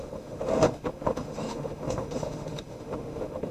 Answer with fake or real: fake